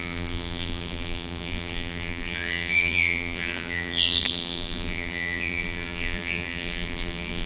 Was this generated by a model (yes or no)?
yes